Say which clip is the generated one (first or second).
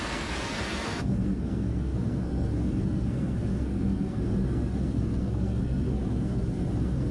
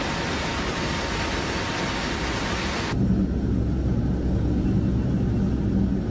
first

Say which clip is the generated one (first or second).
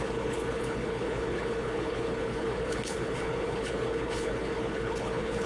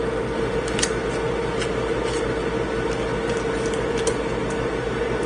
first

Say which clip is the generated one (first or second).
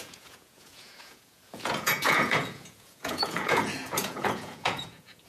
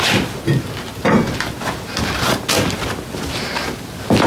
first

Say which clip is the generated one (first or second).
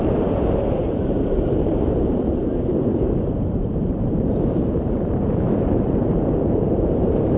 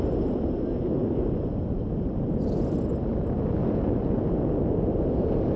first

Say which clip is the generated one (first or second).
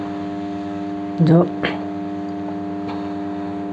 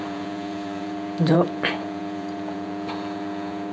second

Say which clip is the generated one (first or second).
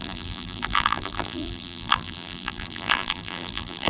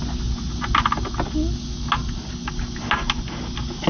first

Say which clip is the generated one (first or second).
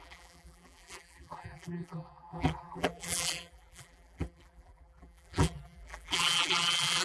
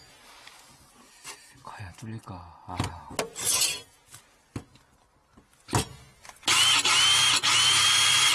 first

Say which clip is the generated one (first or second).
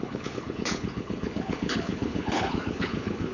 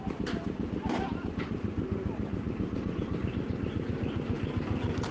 first